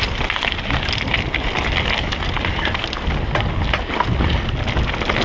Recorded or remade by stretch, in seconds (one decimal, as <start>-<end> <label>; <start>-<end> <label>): 0.0-5.2 recorded